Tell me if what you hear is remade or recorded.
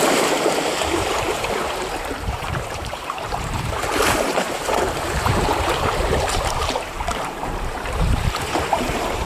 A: remade